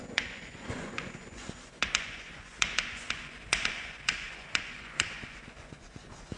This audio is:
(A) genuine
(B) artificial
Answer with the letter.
B